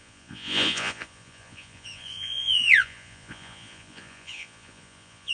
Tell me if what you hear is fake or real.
fake